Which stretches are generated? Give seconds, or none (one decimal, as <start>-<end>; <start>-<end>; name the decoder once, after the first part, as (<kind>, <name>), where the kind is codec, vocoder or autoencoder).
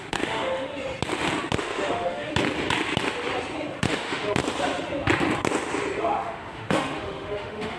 0.0-0.7 (autoencoder, DAC-VAE); 1.6-2.3; 3.8-4.4; 6.0-7.8